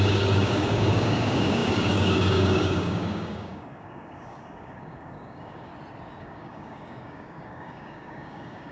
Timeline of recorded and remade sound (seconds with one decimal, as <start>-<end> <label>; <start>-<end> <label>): 0.0-5.7 remade; 5.7-6.2 recorded; 6.2-8.7 remade